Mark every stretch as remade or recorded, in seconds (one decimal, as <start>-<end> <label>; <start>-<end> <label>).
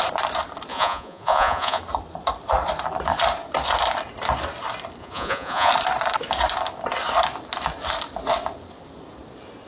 0.0-0.7 recorded; 0.7-1.8 remade; 1.8-5.0 recorded; 5.0-5.7 remade; 5.7-9.7 recorded